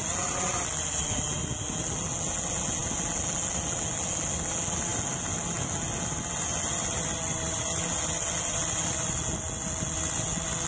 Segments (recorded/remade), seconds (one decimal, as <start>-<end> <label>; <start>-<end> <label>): 0.0-10.7 recorded